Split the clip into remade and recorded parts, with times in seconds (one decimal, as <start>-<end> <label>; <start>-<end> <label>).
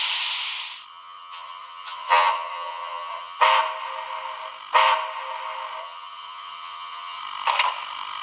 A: 0.0-0.9 recorded; 0.9-3.4 remade; 3.4-5.8 recorded; 5.8-7.2 remade; 7.2-8.2 recorded